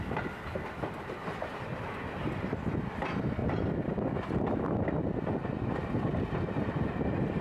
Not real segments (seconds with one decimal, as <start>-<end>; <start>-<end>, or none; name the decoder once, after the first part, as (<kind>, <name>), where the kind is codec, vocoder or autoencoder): 3.4-4.6 (vocoder, BigVGAN v2)